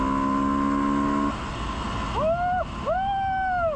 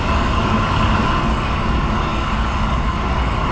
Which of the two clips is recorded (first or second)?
first